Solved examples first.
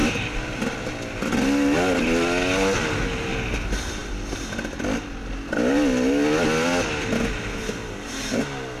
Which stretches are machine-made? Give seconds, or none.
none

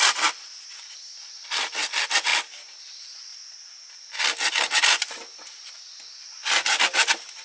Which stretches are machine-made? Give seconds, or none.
0.0-2.3; 2.8-3.3; 6.8-7.4

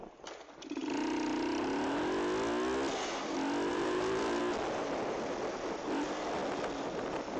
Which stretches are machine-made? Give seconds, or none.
3.7-4.4

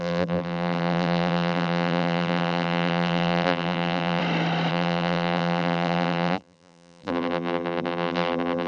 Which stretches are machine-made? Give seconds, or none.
0.0-4.2; 4.7-8.7

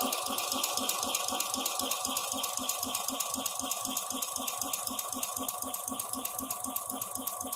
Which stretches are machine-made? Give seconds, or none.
2.2-5.2

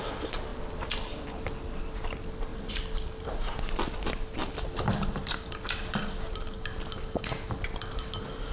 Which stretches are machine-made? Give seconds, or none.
0.5-1.8; 2.5-3.3; 4.4-5.8